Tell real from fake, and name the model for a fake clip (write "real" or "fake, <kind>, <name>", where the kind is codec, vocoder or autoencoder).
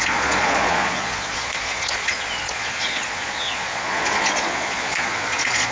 fake, vocoder, Vocos